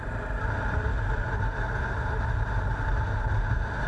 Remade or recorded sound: recorded